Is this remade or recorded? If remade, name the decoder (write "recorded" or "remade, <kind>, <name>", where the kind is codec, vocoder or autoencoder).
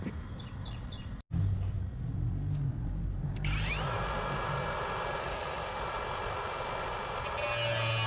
recorded